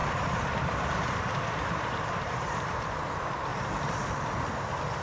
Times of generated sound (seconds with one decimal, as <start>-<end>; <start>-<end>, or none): 0.0-3.0; 3.5-4.1